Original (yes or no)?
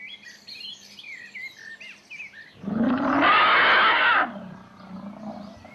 yes